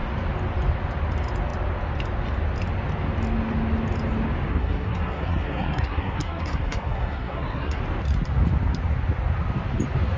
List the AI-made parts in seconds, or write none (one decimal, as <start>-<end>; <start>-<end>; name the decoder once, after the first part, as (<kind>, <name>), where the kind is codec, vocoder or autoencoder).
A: 4.5-7.8 (codec, SNAC)